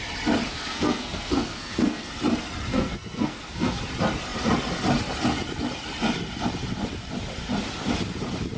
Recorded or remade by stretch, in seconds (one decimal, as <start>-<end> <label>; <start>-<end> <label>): 0.0-0.5 recorded; 0.5-2.1 remade; 2.1-2.7 recorded; 2.7-3.8 remade; 3.8-8.6 recorded